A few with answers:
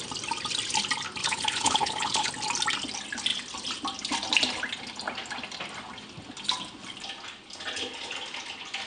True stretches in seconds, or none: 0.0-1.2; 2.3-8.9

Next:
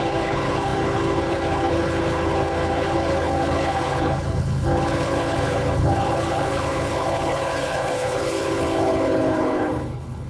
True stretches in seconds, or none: none